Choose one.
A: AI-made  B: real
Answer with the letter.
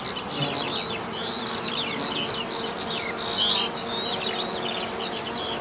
B